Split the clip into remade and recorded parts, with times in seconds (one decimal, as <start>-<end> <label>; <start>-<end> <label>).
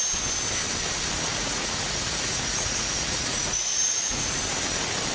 0.0-1.3 recorded; 1.3-4.4 remade; 4.4-5.1 recorded